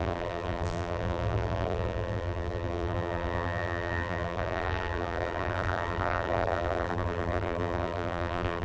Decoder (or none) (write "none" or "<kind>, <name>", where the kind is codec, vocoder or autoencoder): vocoder, BigVGAN v2